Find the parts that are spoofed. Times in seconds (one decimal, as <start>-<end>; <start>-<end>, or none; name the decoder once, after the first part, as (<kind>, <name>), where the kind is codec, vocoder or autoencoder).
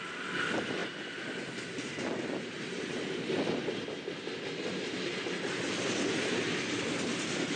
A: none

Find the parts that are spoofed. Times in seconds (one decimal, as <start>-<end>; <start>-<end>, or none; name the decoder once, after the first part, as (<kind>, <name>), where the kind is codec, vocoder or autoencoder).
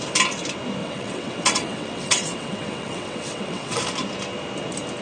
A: 0.8-3.8 (vocoder, WaveNeXt)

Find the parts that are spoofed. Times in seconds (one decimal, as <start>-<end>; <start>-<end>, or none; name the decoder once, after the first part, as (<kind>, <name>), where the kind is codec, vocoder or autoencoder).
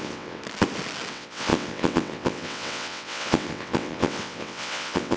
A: 0.0-0.4 (vocoder, WaveNeXt); 1.1-5.2